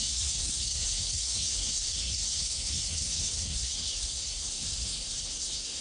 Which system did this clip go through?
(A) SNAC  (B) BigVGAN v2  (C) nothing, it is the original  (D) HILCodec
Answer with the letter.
A